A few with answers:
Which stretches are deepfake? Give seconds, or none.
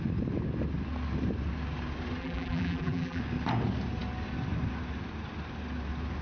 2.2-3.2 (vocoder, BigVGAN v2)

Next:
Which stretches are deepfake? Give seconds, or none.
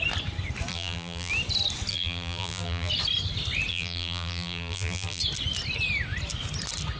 0.7-1.3 (vocoder, BigVGAN v2); 1.9-2.9; 3.7-5.2